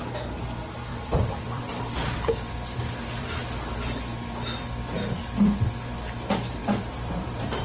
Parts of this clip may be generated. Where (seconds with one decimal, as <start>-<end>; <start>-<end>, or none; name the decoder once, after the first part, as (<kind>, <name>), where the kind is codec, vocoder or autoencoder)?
0.9-3.3 (vocoder, BigVGAN v2); 6.6-7.6